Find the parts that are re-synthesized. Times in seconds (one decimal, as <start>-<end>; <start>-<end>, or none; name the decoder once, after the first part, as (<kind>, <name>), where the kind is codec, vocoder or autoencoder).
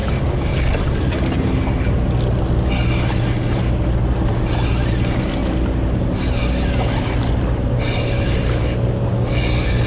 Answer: none